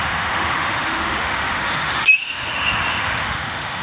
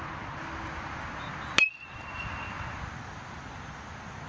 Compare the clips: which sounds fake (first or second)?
first